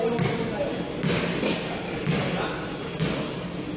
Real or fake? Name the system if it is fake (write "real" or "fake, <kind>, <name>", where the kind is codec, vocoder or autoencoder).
real